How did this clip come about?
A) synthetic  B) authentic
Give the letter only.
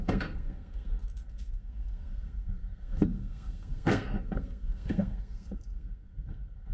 A